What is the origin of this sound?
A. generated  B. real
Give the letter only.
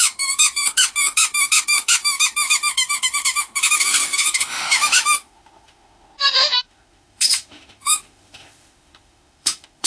A